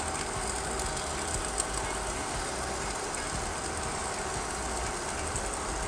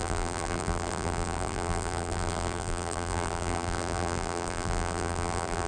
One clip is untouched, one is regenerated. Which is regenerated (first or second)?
second